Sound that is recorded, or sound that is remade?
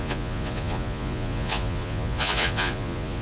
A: remade